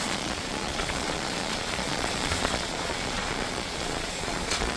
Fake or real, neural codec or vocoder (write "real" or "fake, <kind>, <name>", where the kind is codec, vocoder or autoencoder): fake, vocoder, Vocos